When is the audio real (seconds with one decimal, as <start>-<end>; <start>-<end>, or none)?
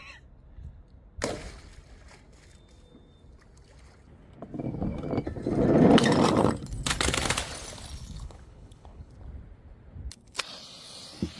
0.0-8.0; 9.1-11.4